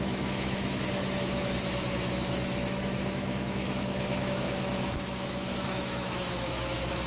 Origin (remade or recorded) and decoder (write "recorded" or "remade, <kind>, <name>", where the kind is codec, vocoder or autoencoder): remade, autoencoder, DAC-VAE